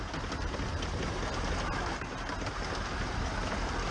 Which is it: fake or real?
real